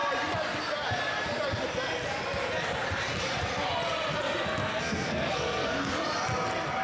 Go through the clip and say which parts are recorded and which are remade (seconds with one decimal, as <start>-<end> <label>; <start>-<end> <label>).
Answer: 0.0-4.6 recorded; 4.6-6.0 remade; 6.0-6.8 recorded